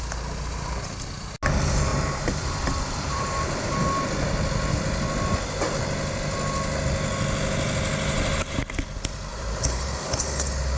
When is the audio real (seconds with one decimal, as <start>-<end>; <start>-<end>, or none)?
0.0-1.9; 3.6-9.3; 10.1-10.8